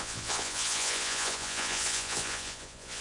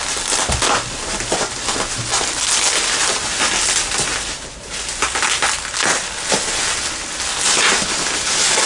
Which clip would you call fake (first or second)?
first